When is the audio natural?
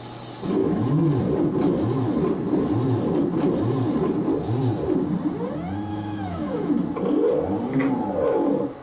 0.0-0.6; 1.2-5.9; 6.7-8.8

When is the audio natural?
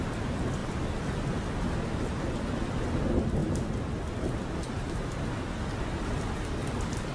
0.0-7.1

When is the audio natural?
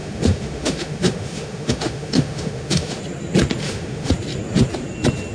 3.0-3.6; 4.1-5.3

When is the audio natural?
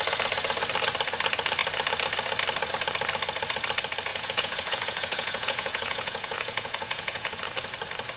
0.0-4.1; 7.4-8.2